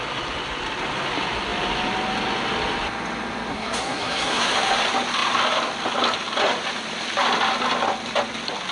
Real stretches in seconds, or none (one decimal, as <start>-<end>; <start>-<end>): 0.0-3.5; 4.5-8.7